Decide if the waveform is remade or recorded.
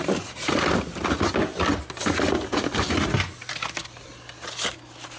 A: recorded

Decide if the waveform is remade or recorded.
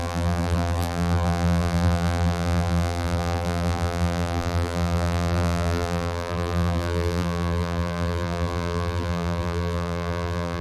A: remade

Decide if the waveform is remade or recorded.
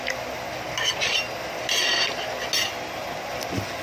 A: recorded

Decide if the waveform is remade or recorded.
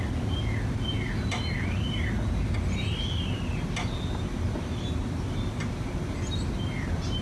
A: recorded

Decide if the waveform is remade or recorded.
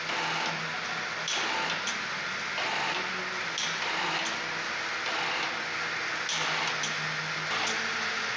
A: recorded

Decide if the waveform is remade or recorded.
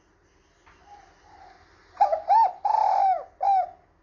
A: recorded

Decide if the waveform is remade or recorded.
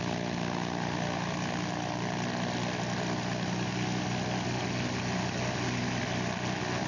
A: recorded